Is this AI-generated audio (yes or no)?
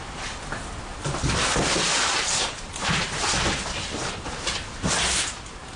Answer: no